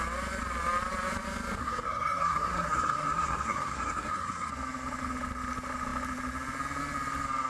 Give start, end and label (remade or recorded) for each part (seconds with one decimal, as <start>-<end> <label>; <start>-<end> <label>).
0.0-1.6 recorded; 1.6-4.5 remade; 4.5-7.5 recorded